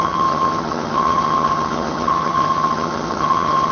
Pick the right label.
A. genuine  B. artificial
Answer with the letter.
B